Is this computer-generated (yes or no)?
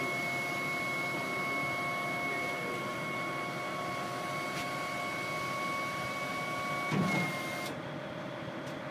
no